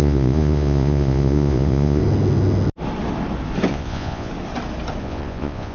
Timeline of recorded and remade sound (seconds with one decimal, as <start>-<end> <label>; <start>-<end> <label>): 0.0-2.0 remade; 2.0-3.7 recorded; 3.7-4.3 remade; 4.3-5.0 recorded; 5.0-5.7 remade